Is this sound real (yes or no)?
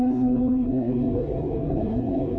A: no